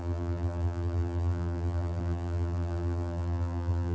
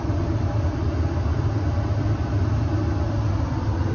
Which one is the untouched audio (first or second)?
second